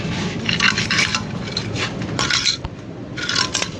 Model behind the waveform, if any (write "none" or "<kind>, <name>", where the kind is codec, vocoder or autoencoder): vocoder, BigVGAN v2